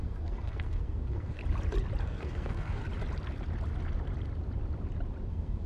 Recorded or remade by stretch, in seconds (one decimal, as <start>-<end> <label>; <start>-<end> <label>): 0.0-1.4 remade; 1.4-2.0 recorded; 2.0-2.8 remade; 2.8-5.3 recorded; 5.3-5.7 remade